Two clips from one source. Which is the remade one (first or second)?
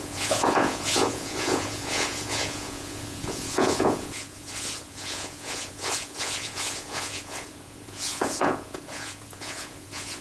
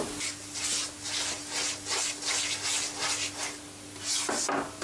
first